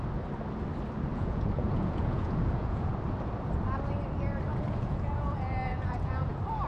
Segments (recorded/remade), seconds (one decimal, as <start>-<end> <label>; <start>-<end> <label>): 0.0-1.1 recorded; 1.1-2.9 remade; 2.9-4.5 recorded; 4.5-6.3 remade; 6.3-6.7 recorded